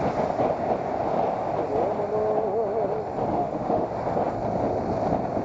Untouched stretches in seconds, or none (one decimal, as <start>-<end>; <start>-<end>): 0.0-3.3; 3.9-5.4